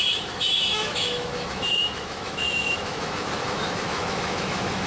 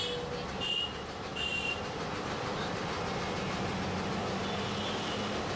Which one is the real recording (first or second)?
second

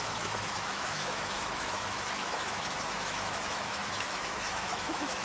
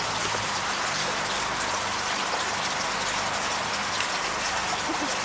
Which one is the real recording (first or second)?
second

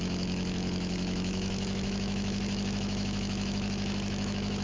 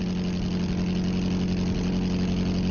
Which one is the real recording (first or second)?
second